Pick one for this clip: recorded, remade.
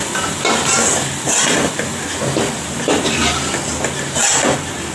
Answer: recorded